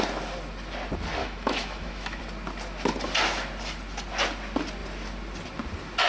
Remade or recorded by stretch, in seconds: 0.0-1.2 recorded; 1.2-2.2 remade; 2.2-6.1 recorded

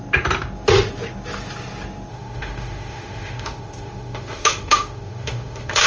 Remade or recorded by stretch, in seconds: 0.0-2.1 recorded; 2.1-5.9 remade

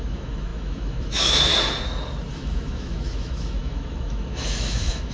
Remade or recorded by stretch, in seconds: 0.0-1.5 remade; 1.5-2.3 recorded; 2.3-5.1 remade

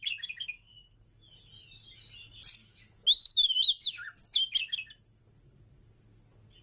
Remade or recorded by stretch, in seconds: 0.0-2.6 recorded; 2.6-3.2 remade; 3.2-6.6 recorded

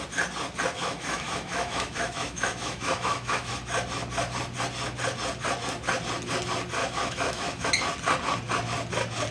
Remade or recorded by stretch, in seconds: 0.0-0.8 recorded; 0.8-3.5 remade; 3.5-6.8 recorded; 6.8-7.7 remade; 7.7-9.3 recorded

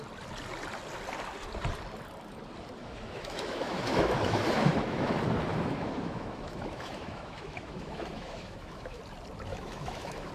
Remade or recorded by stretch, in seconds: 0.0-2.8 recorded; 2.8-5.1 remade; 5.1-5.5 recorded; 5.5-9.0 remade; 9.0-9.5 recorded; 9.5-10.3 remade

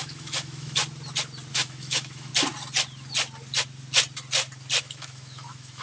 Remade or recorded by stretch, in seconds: 0.0-0.8 remade; 0.8-1.5 recorded; 1.5-2.3 remade; 2.3-4.8 recorded; 4.8-5.8 remade